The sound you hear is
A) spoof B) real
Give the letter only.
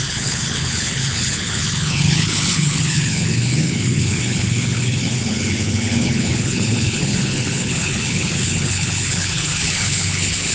A